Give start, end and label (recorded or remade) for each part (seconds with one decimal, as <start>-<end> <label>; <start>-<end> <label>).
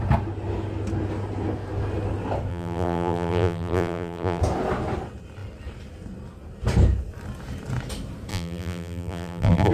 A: 0.0-2.5 recorded; 2.5-4.4 remade; 4.4-8.3 recorded; 8.3-9.7 remade